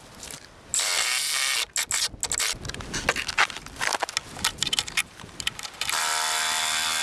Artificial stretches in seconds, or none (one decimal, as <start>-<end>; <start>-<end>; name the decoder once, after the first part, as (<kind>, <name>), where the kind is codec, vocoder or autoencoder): 0.7-1.3 (vocoder, BigVGAN v2); 4.5-6.0